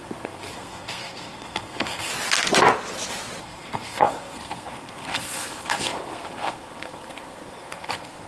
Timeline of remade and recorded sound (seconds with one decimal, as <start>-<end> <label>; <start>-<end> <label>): 0.0-2.1 remade; 2.1-3.4 recorded; 3.4-8.3 remade

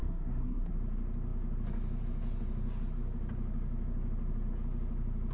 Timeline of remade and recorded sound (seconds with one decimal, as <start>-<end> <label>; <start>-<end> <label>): 0.0-0.7 remade; 0.7-5.3 recorded

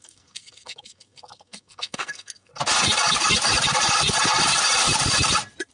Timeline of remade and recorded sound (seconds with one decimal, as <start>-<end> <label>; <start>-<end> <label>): 0.0-2.5 remade; 2.5-5.7 recorded

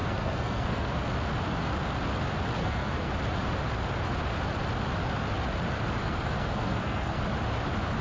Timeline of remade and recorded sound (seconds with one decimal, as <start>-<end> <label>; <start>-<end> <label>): 0.0-1.0 remade; 1.0-2.6 recorded; 2.6-3.1 remade; 3.1-6.0 recorded; 6.0-7.2 remade; 7.2-8.0 recorded

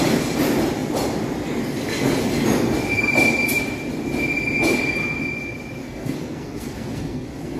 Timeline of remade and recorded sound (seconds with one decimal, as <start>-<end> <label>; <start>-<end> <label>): 0.0-5.8 recorded; 5.8-7.6 remade

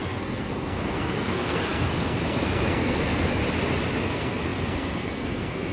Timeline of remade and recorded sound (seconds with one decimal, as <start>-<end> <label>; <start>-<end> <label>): 0.0-3.4 remade; 3.4-4.0 recorded; 4.0-5.7 remade

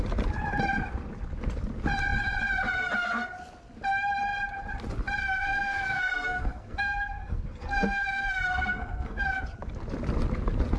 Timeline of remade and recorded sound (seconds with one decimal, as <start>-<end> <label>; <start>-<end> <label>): 0.0-5.2 recorded; 5.2-9.4 remade; 9.4-10.8 recorded

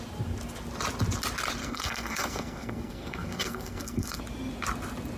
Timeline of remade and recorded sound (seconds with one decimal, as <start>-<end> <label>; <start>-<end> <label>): 0.0-1.6 recorded; 1.6-4.2 remade; 4.2-5.2 recorded